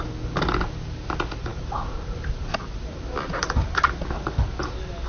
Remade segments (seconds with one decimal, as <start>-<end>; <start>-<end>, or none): none